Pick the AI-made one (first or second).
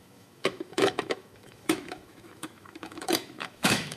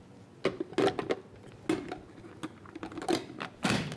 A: first